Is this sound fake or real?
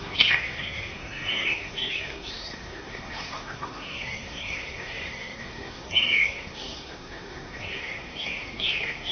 fake